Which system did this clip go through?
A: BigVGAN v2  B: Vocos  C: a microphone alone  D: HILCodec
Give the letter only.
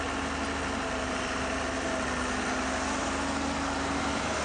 C